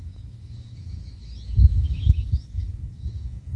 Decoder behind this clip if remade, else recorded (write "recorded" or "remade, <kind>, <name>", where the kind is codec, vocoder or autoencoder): remade, autoencoder, DAC-VAE